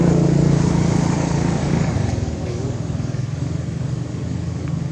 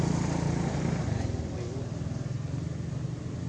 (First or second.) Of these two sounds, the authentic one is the second